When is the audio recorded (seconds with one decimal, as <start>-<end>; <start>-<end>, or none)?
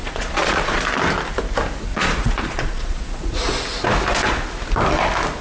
0.8-1.9; 3.4-5.4